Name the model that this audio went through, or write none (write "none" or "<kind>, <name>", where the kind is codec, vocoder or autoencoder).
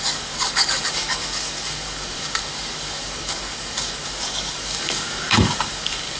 codec, DAC